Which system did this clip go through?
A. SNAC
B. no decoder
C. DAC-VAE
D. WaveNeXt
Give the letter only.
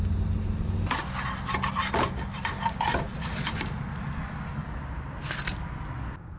B